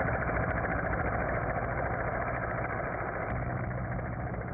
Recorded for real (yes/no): yes